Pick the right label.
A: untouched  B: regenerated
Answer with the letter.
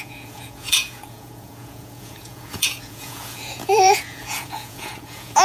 B